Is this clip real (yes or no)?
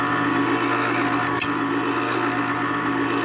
yes